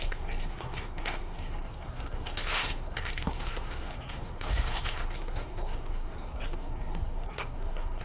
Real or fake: fake